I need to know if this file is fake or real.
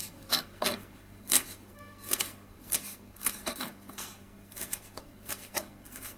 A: fake